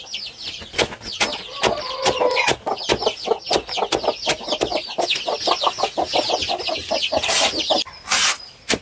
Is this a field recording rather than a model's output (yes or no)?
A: yes